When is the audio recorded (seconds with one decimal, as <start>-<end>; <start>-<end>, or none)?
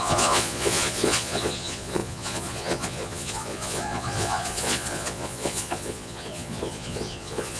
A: none